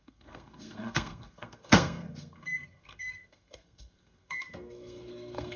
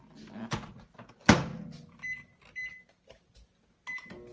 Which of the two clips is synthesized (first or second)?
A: first